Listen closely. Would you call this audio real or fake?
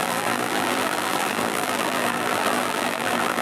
fake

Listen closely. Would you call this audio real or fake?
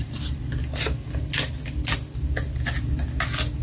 real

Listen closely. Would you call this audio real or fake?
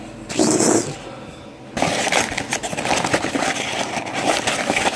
real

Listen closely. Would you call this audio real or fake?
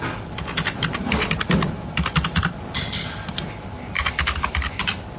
real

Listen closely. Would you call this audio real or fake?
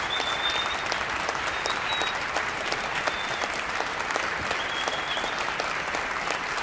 real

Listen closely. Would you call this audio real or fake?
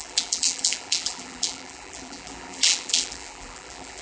fake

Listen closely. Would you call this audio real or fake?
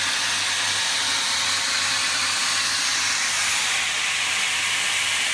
real